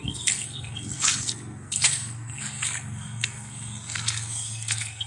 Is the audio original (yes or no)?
no